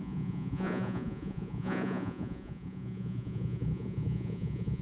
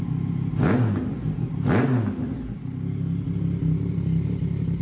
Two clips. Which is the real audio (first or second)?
second